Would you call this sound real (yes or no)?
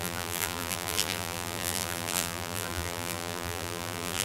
no